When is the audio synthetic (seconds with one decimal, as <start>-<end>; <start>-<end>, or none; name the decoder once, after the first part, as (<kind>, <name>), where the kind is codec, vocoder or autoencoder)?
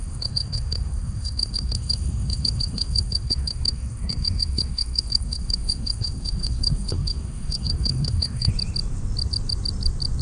0.0-8.5 (codec, SNAC)